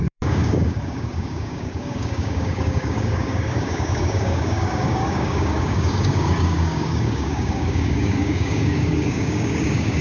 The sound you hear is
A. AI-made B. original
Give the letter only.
A